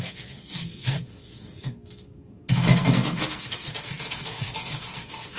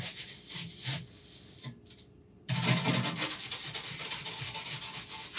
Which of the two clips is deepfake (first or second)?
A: first